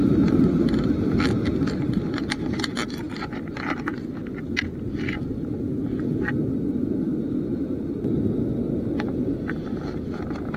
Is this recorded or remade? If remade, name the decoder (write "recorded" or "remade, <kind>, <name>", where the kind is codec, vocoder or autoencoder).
recorded